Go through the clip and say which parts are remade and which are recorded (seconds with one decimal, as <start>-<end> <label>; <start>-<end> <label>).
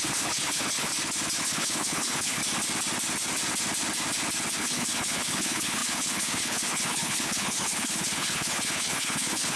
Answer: 0.0-0.9 remade; 0.9-1.4 recorded; 1.4-2.4 remade; 2.4-4.6 recorded; 4.6-9.6 remade